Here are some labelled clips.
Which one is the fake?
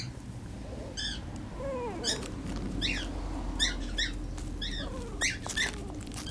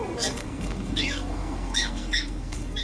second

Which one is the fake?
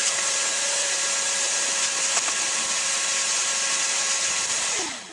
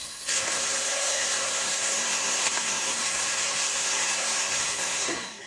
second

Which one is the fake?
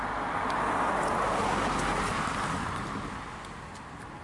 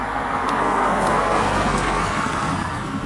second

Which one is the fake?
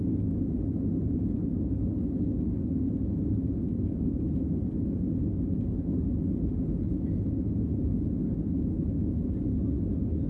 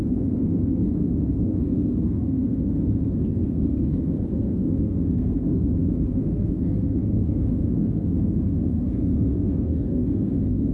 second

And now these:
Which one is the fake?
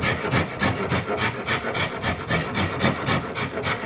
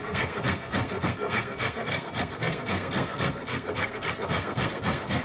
second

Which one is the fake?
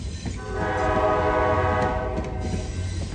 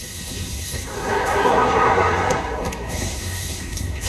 second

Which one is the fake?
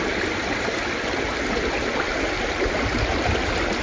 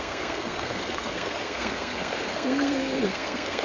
second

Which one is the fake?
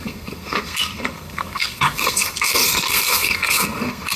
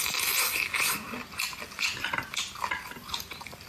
first